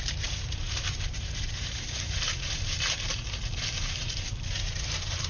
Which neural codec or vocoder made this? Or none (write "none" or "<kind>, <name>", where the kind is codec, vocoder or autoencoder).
vocoder, BigVGAN v2